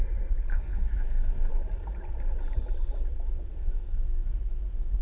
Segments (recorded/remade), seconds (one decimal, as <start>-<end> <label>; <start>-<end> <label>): 0.0-0.5 recorded; 0.5-1.5 remade; 1.5-3.5 recorded; 3.5-4.4 remade; 4.4-5.0 recorded